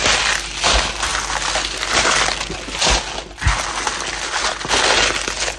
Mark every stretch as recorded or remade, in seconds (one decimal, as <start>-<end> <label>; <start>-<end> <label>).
0.0-5.6 recorded